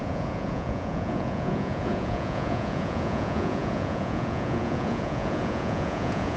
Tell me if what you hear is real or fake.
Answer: fake